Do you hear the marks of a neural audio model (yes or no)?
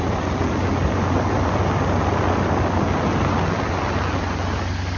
no